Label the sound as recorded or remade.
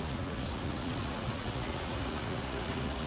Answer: remade